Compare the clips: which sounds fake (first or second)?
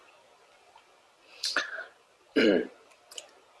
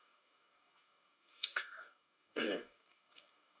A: second